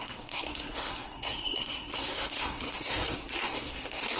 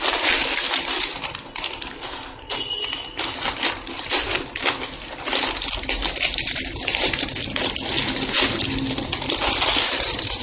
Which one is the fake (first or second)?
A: first